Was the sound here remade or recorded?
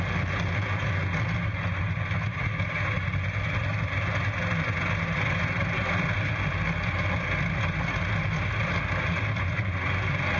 recorded